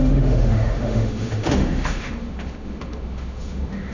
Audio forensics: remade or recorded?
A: remade